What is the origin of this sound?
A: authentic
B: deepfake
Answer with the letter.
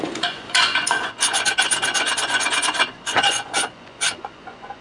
B